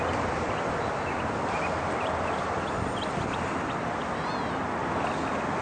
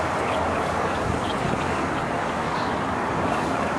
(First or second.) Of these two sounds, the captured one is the first